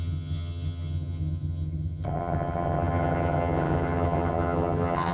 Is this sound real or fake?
fake